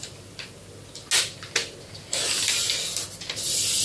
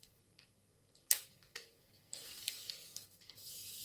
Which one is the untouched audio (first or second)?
first